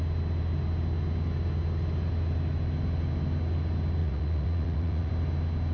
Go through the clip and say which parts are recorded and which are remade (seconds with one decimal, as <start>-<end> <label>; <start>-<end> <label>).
0.0-4.0 recorded; 4.0-5.1 remade; 5.1-5.7 recorded